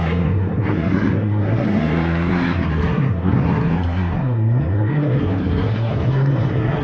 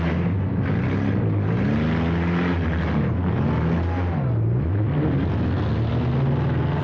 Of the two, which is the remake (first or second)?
first